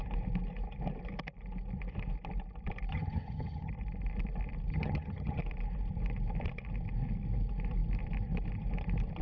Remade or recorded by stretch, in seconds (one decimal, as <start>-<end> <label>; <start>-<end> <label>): 0.0-2.9 recorded; 2.9-3.7 remade; 3.7-4.7 recorded; 4.7-5.4 remade; 5.4-9.2 recorded